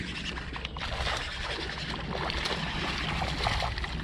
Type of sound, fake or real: real